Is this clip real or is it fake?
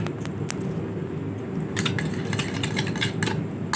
real